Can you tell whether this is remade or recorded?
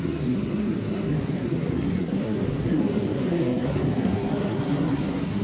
remade